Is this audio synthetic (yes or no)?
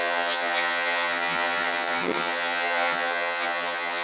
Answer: yes